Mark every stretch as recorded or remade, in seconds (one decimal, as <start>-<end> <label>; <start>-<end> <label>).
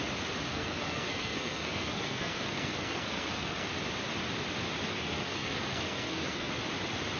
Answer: 0.0-0.5 recorded; 0.5-3.7 remade; 3.7-4.9 recorded; 4.9-6.5 remade; 6.5-7.2 recorded